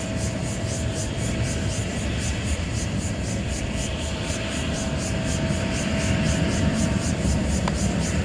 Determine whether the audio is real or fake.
fake